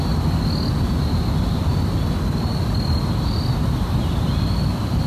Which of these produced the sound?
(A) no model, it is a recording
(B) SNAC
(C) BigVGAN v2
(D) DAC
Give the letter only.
A